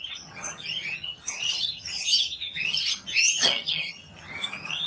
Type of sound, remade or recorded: remade